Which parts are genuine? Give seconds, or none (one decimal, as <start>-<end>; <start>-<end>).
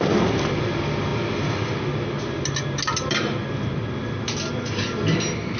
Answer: 0.0-5.6